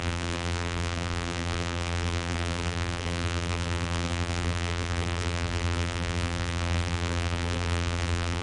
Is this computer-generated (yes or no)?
yes